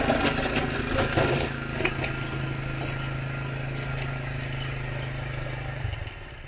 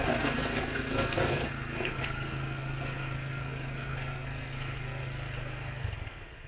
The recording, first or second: first